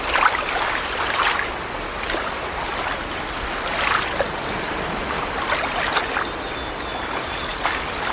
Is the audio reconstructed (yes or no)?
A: no